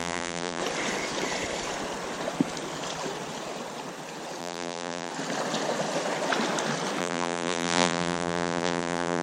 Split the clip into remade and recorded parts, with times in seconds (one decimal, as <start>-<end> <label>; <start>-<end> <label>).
0.0-0.6 remade; 0.6-4.4 recorded; 4.4-5.1 remade; 5.1-7.0 recorded; 7.0-9.2 remade